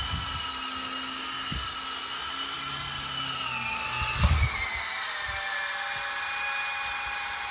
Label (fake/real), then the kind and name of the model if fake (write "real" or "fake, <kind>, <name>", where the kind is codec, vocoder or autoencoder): real